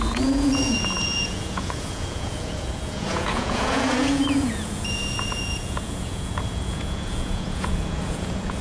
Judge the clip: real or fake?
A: fake